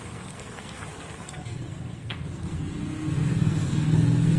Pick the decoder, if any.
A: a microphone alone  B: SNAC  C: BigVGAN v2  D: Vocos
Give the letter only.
B